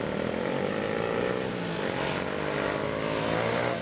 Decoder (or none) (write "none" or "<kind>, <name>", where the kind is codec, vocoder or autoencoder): none